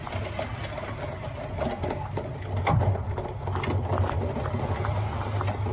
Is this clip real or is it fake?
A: real